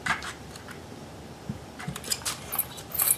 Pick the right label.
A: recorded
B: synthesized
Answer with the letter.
B